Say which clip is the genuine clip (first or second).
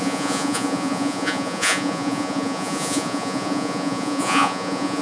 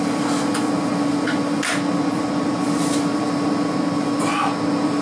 second